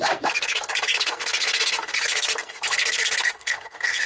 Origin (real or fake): fake